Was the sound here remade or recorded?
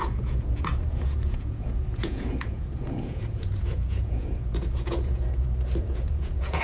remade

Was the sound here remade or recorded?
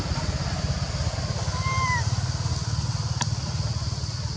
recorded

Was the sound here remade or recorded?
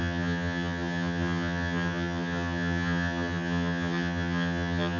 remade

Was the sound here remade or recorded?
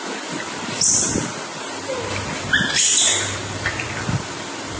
remade